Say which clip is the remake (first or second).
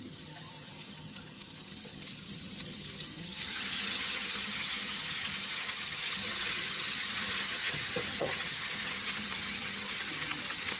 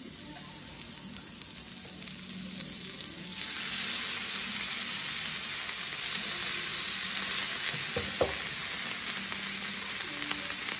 first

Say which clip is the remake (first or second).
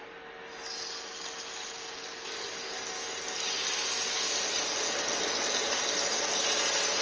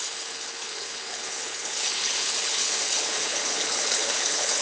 second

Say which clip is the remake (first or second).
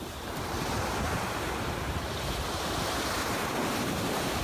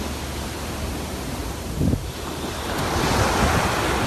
first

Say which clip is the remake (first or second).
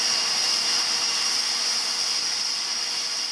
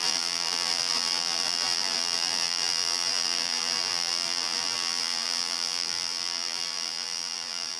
second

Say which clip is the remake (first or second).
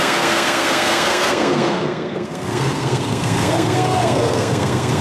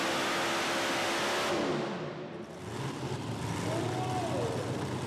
first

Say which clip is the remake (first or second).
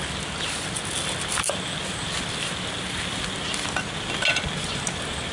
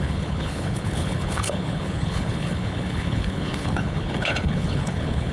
second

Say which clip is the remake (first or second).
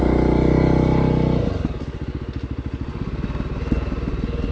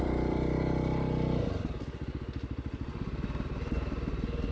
second